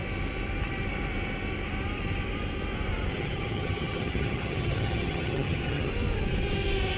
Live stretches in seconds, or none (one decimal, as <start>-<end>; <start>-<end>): 0.0-3.1; 5.9-7.0